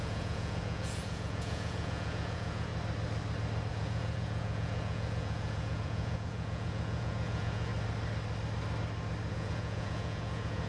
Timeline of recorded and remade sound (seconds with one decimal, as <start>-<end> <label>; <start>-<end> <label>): 0.0-2.7 remade; 2.7-3.7 recorded; 3.7-7.7 remade; 7.7-9.3 recorded; 9.3-10.7 remade